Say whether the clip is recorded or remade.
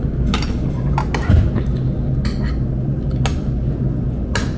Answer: recorded